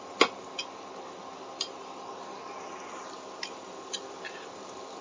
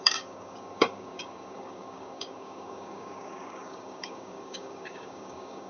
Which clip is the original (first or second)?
first